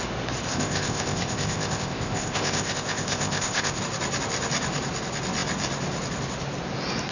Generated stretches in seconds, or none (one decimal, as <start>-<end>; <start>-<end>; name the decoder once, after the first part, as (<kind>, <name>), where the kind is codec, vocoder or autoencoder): 0.5-3.8 (codec, ZipCodec)